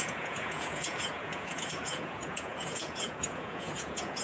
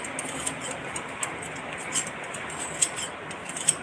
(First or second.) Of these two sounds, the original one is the second